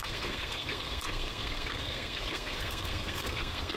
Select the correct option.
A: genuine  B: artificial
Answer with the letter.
B